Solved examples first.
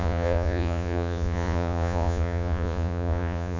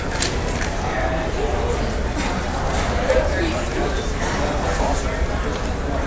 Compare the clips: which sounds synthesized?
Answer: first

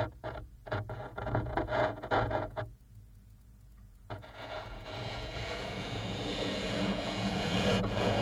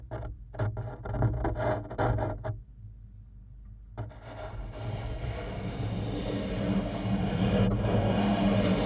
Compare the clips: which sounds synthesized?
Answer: first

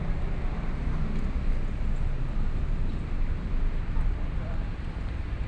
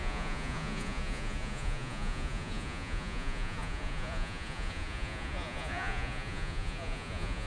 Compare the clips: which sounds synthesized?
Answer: second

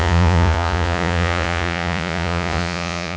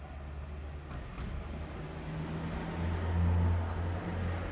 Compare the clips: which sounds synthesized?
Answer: first